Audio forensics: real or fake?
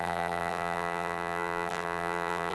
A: fake